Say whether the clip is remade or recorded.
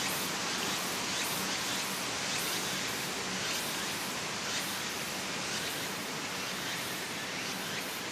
recorded